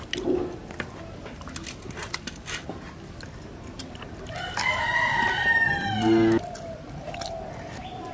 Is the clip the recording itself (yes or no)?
yes